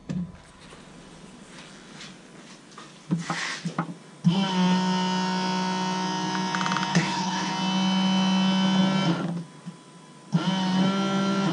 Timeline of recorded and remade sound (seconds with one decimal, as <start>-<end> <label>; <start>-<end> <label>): 0.0-6.9 recorded; 6.9-7.5 remade; 7.5-11.5 recorded